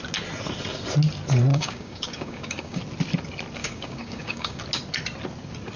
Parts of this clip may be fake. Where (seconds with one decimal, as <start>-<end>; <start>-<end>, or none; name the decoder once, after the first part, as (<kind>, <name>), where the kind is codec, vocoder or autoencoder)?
1.5-2.8 (codec, DAC); 3.6-4.6